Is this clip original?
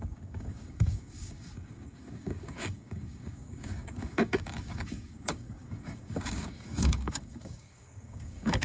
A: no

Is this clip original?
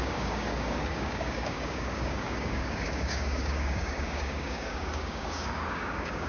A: no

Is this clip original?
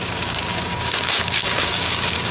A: no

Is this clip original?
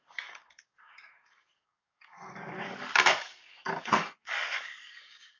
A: no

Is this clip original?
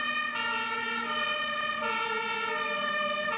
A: yes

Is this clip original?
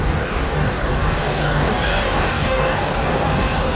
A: no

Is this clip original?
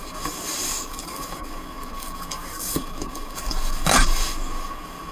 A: no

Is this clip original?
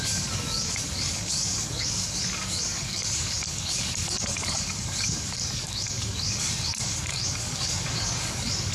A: no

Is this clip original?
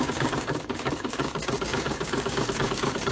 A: no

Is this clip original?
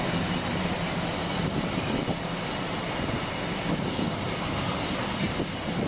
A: yes